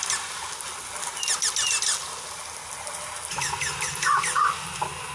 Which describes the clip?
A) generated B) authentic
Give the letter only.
B